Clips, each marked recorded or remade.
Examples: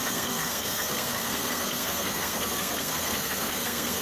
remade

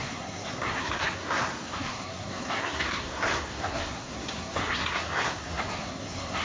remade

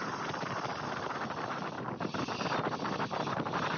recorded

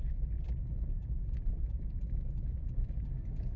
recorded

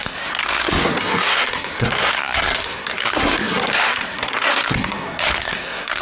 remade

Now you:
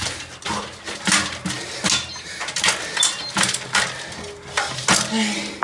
recorded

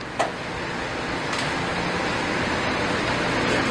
recorded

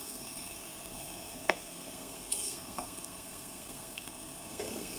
remade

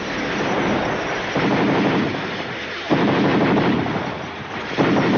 recorded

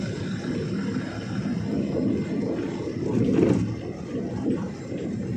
recorded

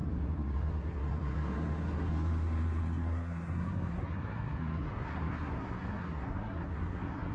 remade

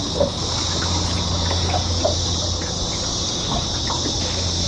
recorded